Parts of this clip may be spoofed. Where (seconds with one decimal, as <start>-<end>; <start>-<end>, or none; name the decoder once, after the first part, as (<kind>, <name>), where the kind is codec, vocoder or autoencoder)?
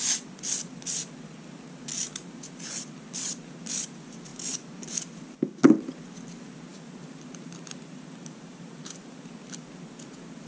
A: 6.7-9.3 (vocoder, BigVGAN v2)